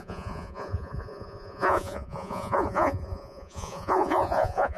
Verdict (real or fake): fake